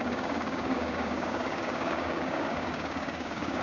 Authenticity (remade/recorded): remade